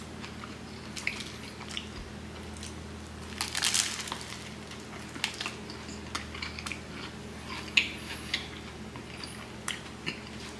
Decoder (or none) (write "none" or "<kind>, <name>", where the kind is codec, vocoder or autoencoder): none